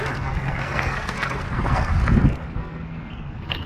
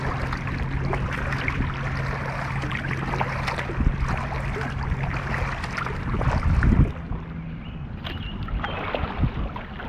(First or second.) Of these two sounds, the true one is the second